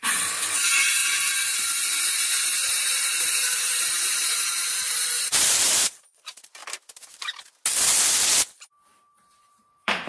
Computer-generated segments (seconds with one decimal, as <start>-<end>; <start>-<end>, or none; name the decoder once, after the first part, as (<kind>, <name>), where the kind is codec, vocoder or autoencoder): 0.0-1.0 (vocoder, BigVGAN v2); 2.0-6.6; 9.4-10.1